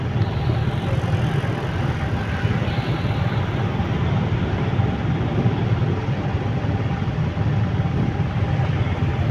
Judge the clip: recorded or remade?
recorded